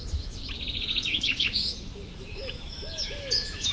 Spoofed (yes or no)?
yes